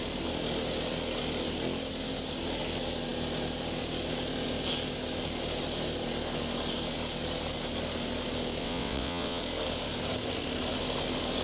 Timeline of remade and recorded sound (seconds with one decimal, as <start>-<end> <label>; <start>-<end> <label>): 0.0-8.6 recorded; 8.6-9.4 remade; 9.4-11.4 recorded